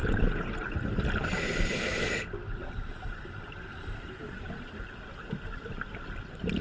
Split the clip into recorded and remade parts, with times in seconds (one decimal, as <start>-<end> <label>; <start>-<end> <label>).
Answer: 0.0-6.6 recorded